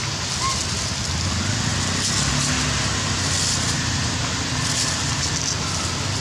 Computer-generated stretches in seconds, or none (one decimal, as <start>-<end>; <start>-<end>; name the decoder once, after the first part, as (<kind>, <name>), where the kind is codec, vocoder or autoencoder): none